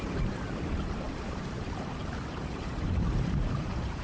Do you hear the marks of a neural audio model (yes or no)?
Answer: yes